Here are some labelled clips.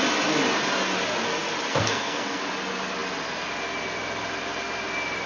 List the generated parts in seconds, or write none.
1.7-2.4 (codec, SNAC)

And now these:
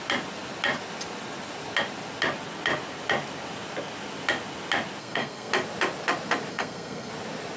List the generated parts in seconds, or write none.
5.0-5.5 (codec, SNAC); 6.5-7.1

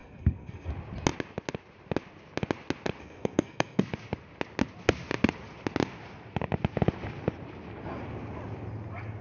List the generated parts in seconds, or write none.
0.0-0.7 (codec, SNAC); 3.0-3.8

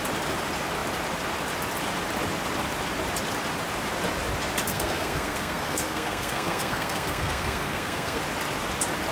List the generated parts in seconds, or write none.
4.7-8.2 (codec, SNAC)

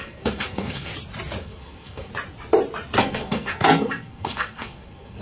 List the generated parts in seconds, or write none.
0.0-0.9 (codec, SNAC); 1.4-2.1; 3.0-5.2

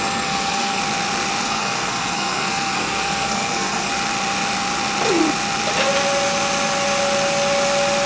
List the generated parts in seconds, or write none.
0.0-0.8 (codec, SNAC); 1.4-3.9